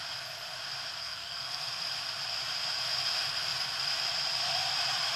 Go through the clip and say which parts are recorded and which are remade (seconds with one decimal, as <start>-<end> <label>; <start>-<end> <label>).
0.0-1.0 recorded; 1.0-1.8 remade; 1.8-5.2 recorded